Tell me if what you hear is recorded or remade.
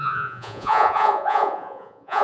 remade